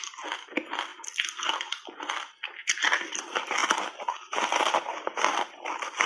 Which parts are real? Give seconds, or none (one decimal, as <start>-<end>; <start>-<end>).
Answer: 0.0-6.1